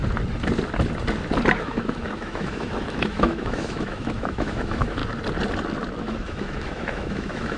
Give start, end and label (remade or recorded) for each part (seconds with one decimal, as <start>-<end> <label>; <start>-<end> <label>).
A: 0.0-1.6 recorded; 1.6-5.0 remade; 5.0-6.0 recorded; 6.0-7.6 remade